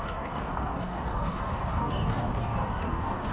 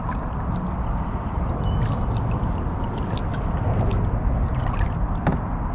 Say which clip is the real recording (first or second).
second